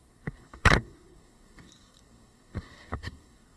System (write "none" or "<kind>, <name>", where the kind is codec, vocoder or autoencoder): codec, SNAC